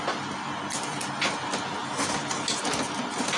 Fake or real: real